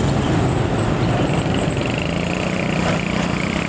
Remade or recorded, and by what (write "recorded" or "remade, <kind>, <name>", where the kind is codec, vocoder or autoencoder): recorded